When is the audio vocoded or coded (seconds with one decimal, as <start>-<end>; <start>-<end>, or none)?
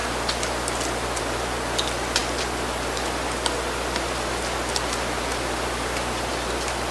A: none